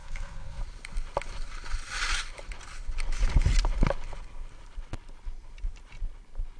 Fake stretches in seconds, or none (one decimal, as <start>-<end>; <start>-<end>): 0.0-0.6